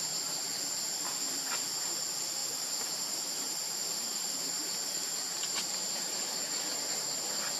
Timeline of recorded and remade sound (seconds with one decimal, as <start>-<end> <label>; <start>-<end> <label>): 0.0-2.4 recorded; 2.4-6.6 remade; 6.6-7.6 recorded